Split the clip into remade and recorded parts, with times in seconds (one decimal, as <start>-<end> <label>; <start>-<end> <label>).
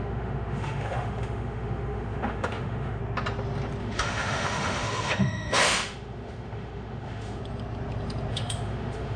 0.0-3.0 remade; 3.0-3.8 recorded; 3.8-7.4 remade; 7.4-8.3 recorded; 8.3-9.2 remade